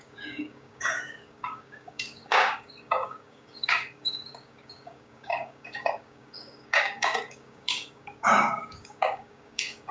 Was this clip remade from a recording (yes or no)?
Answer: yes